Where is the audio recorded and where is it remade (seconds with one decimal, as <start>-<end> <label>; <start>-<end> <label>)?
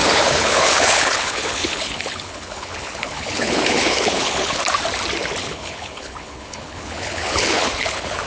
0.0-4.6 remade; 4.6-5.4 recorded; 5.4-8.3 remade